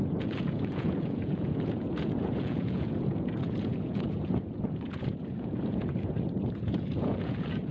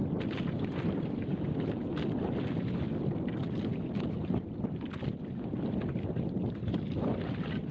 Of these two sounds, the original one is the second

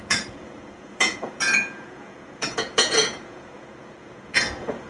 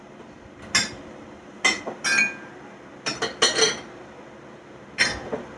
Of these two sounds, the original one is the second